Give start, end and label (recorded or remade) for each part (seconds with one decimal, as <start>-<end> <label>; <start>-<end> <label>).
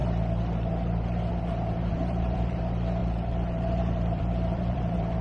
0.0-1.9 recorded; 1.9-2.6 remade; 2.6-3.0 recorded; 3.0-5.2 remade